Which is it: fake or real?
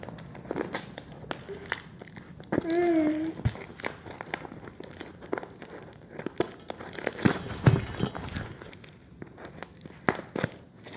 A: real